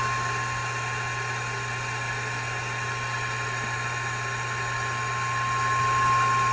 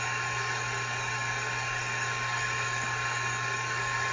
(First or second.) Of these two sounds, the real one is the first